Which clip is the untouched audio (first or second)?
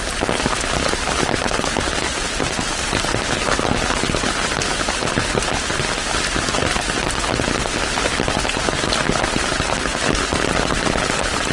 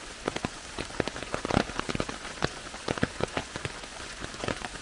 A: first